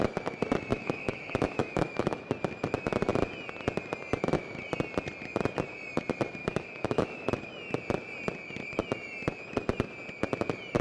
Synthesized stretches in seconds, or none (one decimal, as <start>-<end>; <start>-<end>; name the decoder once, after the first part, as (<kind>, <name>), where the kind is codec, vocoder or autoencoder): 0.7-2.3 (autoencoder, DAC-VAE); 6.4-7.3